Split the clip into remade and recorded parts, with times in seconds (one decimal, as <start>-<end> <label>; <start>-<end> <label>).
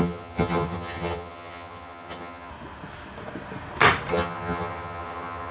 0.0-2.5 remade; 2.5-4.1 recorded; 4.1-5.5 remade